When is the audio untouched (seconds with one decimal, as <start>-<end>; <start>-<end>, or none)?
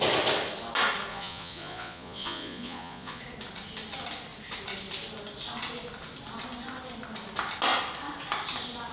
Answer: 0.0-1.1; 3.2-8.9